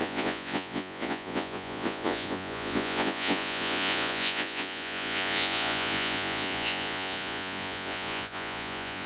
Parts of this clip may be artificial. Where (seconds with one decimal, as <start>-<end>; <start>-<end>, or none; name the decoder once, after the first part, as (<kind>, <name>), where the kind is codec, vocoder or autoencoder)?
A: 0.0-9.1 (vocoder, Vocos)